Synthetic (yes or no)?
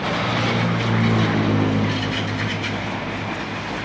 no